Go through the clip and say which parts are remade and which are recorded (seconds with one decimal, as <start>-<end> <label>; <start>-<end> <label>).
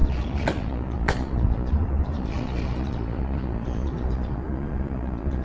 0.0-5.4 remade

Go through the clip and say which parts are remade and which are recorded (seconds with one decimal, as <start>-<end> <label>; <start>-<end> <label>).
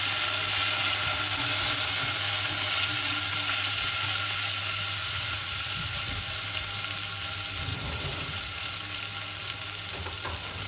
0.0-5.0 recorded; 5.0-6.0 remade; 6.0-7.7 recorded; 7.7-8.7 remade; 8.7-10.7 recorded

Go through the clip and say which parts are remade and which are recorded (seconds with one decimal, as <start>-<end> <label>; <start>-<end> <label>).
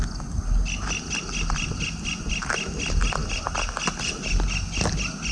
0.0-5.3 recorded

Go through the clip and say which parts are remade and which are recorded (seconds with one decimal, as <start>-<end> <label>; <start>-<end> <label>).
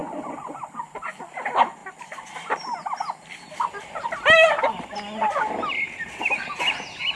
0.0-0.6 remade; 0.6-7.2 recorded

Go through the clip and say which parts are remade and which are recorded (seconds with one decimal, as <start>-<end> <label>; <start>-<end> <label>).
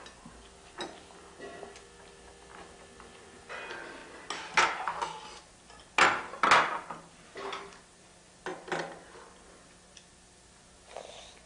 0.0-11.5 recorded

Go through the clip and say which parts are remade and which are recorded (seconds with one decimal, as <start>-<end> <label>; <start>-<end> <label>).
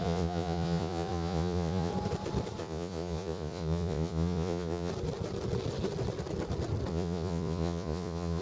0.0-1.9 remade; 1.9-2.6 recorded; 2.6-4.9 remade; 4.9-6.9 recorded; 6.9-8.4 remade